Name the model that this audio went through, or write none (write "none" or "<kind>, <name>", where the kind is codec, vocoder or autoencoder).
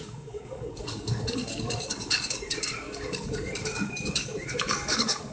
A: codec, DAC